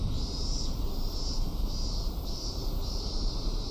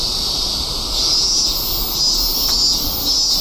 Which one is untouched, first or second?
second